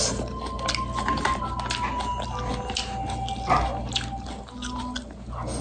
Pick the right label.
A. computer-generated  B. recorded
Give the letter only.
B